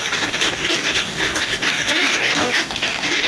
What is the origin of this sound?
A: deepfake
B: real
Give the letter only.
A